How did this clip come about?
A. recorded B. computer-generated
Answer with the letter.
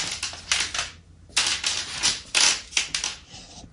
A